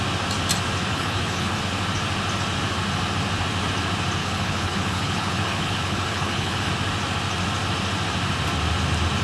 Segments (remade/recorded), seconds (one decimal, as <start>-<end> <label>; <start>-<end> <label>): 0.0-0.9 recorded; 0.9-1.6 remade; 1.6-4.2 recorded; 4.2-6.7 remade; 6.7-9.2 recorded